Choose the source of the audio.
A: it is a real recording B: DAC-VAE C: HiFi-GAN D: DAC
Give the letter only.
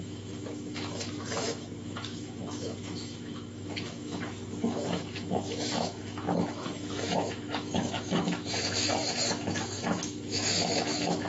B